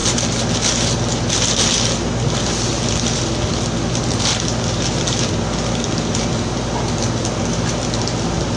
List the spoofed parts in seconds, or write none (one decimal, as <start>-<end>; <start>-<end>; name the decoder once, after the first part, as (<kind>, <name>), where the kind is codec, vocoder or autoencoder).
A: none